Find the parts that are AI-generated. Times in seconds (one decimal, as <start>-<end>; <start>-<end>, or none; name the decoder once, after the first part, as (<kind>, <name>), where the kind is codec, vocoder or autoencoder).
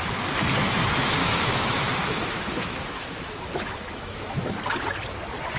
1.2-4.6 (autoencoder, DAC-VAE)